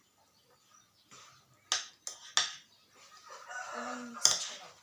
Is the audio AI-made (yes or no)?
no